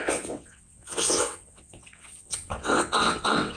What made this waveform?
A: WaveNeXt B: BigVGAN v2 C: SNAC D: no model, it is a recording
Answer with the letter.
A